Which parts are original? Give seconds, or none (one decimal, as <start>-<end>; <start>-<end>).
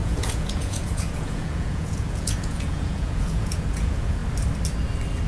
4.2-5.3